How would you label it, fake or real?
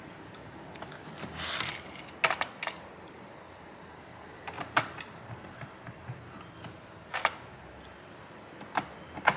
real